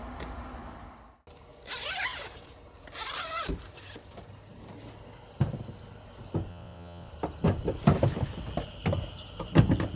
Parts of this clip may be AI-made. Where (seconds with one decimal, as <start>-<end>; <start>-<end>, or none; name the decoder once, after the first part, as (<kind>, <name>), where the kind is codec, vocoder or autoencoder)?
6.5-7.1 (vocoder, WaveNeXt)